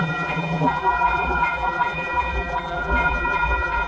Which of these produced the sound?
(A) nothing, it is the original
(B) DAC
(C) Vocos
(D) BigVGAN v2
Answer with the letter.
D